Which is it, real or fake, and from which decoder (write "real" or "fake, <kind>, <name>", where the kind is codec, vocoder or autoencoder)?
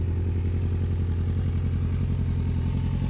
real